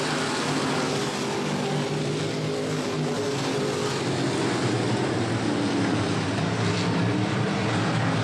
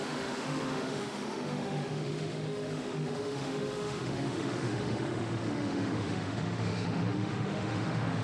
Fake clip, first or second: second